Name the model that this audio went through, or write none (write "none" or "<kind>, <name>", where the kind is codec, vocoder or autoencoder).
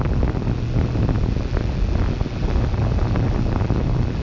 none